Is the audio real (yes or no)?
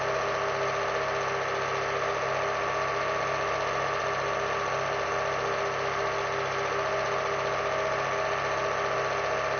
yes